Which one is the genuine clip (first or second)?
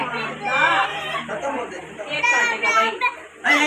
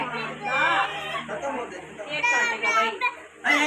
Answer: second